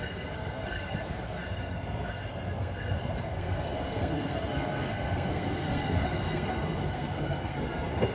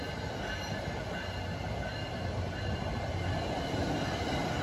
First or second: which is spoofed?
first